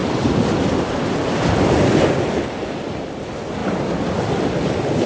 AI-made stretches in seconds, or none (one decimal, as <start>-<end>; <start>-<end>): 0.0-3.1